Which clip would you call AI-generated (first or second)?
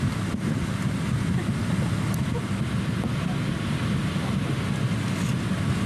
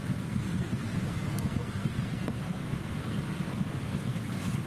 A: second